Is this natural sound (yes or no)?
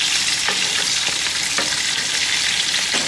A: yes